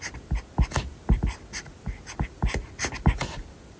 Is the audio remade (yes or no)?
no